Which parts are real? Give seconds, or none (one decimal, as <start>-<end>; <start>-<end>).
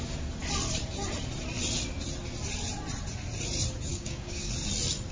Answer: 0.0-3.9; 4.5-5.1